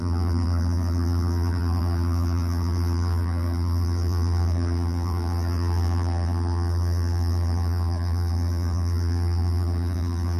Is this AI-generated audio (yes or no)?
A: yes